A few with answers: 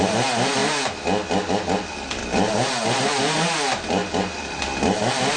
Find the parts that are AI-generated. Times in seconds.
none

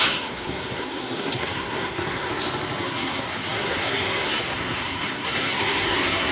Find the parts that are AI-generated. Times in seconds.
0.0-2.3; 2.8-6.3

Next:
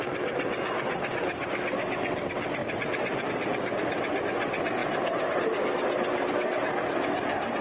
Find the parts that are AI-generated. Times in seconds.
none

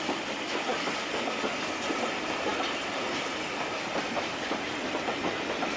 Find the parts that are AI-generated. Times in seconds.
none